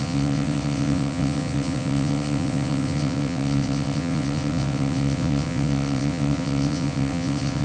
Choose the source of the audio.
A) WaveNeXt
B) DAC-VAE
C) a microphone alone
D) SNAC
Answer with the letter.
A